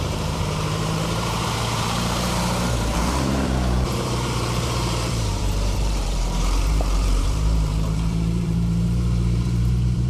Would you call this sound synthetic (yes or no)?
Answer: yes